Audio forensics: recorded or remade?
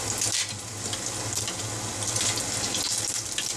recorded